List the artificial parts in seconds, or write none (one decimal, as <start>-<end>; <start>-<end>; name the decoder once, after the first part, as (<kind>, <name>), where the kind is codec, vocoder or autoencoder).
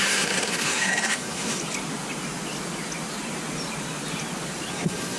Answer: 0.0-1.6 (codec, SNAC); 4.7-5.2